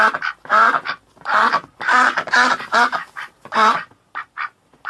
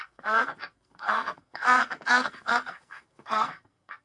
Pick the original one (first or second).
first